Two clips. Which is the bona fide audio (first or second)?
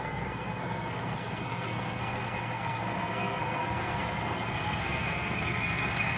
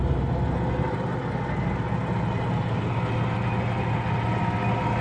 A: second